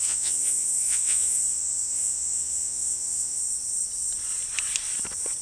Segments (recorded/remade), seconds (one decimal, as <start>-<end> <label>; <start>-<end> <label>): 0.0-3.4 remade; 3.4-5.4 recorded